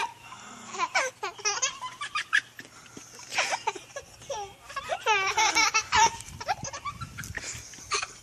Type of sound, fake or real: real